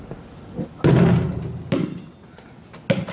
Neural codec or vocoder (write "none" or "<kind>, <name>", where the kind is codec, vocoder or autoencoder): none